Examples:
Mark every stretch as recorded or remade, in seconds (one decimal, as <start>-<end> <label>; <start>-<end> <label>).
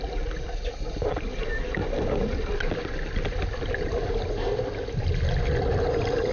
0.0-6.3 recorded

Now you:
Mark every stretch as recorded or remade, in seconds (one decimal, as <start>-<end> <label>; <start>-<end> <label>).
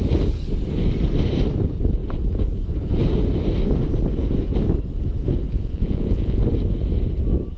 0.0-5.5 recorded; 5.5-6.4 remade; 6.4-7.6 recorded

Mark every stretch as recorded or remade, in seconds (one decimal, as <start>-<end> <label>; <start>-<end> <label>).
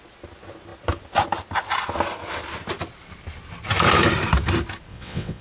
0.0-4.9 recorded; 4.9-5.4 remade